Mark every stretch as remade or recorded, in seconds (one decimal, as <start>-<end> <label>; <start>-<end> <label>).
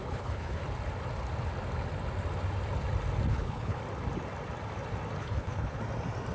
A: 0.0-0.6 remade; 0.6-3.3 recorded; 3.3-3.8 remade; 3.8-5.2 recorded; 5.2-5.8 remade; 5.8-6.3 recorded